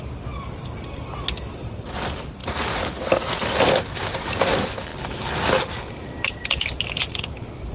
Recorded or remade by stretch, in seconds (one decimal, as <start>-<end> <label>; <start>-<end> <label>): 0.0-7.7 recorded